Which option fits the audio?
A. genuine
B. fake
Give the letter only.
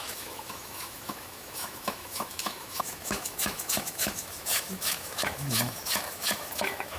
B